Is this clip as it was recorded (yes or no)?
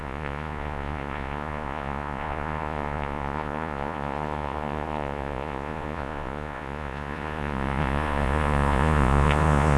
no